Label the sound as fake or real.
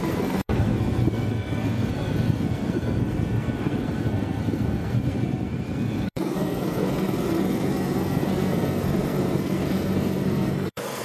fake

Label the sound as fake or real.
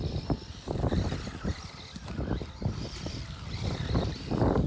real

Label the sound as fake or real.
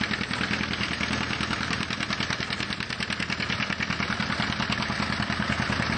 real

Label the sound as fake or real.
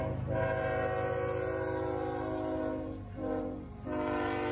real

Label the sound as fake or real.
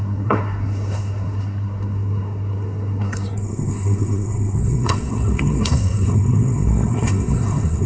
fake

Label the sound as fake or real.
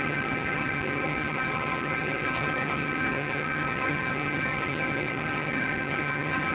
fake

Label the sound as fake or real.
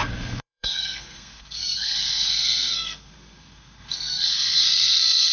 fake